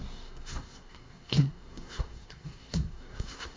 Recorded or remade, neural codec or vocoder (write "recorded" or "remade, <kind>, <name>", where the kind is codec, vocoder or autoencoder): remade, codec, SNAC